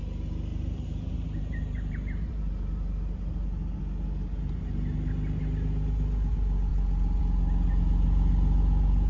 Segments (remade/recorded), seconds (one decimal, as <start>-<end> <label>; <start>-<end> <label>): 0.0-0.5 recorded; 0.5-3.8 remade; 3.8-9.1 recorded